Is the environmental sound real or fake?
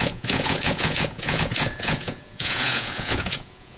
fake